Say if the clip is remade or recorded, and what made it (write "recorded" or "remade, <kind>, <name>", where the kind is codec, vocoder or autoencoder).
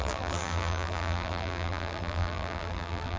remade, vocoder, BigVGAN v2